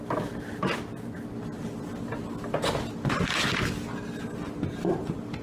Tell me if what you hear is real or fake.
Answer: real